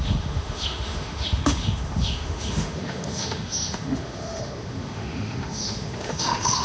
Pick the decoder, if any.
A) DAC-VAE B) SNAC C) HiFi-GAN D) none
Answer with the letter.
A